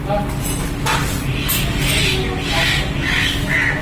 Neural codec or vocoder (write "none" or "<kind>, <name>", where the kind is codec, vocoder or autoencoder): none